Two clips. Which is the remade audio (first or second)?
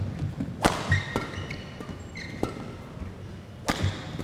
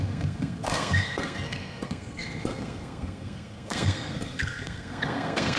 second